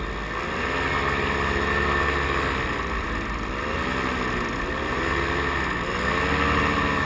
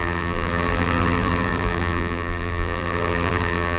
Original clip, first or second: first